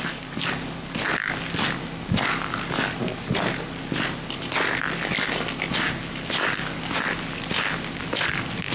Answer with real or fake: real